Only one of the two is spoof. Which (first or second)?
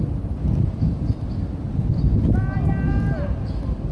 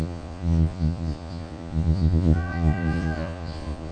second